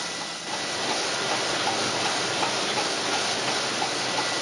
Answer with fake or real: real